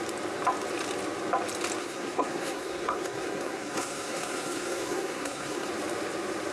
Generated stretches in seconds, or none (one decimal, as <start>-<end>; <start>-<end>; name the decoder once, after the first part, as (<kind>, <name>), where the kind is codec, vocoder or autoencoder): 1.8-5.7 (codec, SNAC)